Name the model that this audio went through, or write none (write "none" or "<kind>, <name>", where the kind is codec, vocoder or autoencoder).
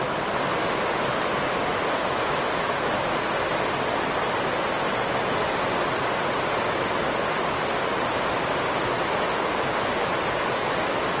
none